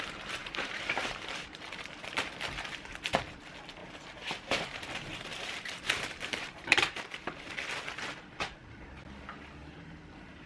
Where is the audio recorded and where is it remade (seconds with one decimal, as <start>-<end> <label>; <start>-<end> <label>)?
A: 0.0-0.4 recorded; 0.4-1.8 remade; 1.8-3.8 recorded; 3.8-7.4 remade; 7.4-9.6 recorded; 9.6-10.1 remade; 10.1-10.5 recorded